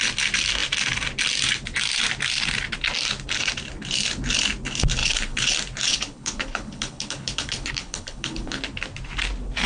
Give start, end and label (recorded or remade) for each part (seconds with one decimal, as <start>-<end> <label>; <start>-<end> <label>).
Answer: 0.0-5.0 recorded; 5.0-5.5 remade; 5.5-5.9 recorded; 5.9-8.6 remade; 8.6-9.7 recorded